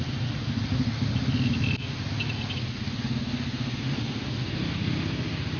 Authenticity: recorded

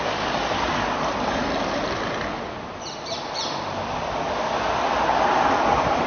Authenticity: recorded